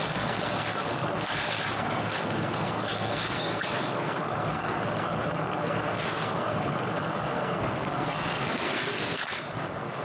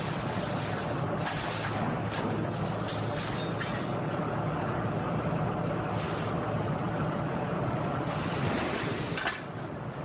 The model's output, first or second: first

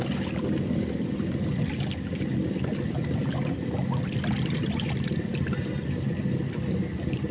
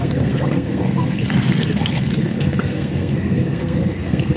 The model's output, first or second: second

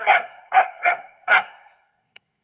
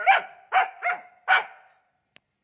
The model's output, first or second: first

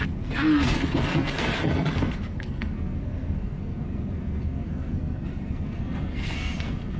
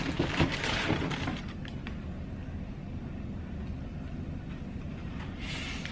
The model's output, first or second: first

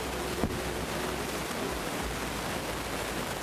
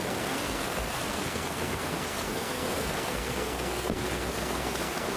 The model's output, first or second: second